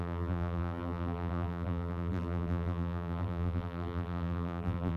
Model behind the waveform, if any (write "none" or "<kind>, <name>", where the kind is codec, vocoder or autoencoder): vocoder, BigVGAN v2